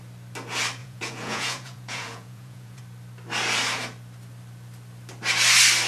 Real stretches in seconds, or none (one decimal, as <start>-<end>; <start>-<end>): 0.0-0.8; 2.8-5.9